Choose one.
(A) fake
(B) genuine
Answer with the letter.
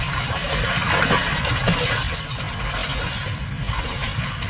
B